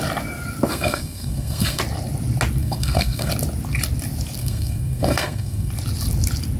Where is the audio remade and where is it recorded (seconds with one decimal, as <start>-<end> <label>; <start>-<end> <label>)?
0.0-0.7 recorded; 0.7-1.8 remade; 1.8-2.6 recorded; 2.6-3.3 remade; 3.3-4.4 recorded; 4.4-5.7 remade; 5.7-6.6 recorded